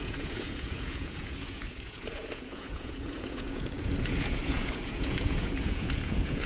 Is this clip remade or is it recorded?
remade